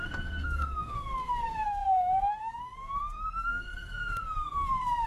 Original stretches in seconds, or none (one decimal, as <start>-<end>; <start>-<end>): none

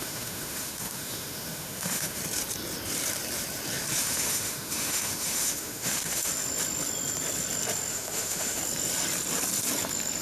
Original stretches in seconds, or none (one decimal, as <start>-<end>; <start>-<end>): 2.2-4.0; 6.3-7.9; 8.6-10.2